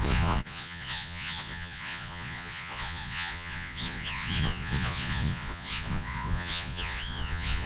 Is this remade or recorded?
remade